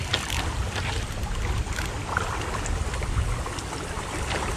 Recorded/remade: recorded